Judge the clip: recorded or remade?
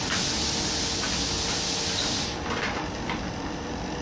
recorded